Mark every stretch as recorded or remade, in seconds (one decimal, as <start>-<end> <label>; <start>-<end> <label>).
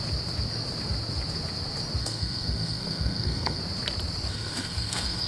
0.0-2.0 recorded; 2.0-3.6 remade; 3.6-4.3 recorded; 4.3-5.3 remade